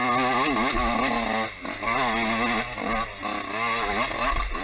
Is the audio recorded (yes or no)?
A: yes